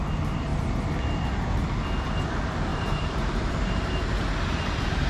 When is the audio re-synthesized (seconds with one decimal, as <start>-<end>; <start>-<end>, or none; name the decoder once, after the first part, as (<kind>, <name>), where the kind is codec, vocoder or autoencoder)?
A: 2.7-5.1 (vocoder, BigVGAN v2)